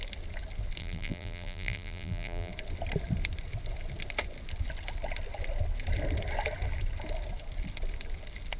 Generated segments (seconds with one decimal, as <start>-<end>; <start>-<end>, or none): 0.8-2.5